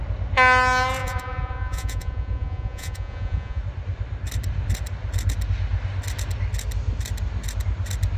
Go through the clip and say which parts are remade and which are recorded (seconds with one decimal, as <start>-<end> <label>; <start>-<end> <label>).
0.0-1.0 recorded; 1.0-3.6 remade; 3.6-8.2 recorded